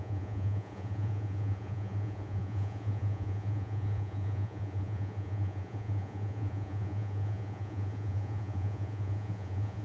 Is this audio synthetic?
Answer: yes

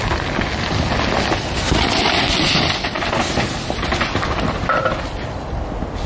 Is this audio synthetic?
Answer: no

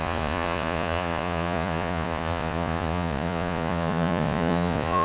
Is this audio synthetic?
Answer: yes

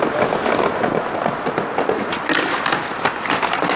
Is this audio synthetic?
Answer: no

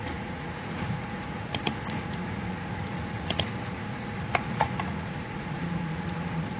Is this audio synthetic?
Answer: yes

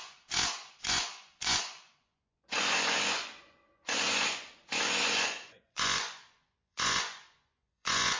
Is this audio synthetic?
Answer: yes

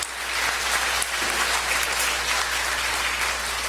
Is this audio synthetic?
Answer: no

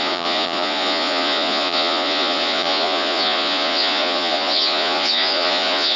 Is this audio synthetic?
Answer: yes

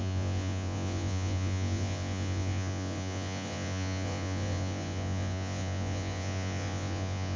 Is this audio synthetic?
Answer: yes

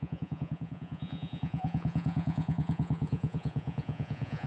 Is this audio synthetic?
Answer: yes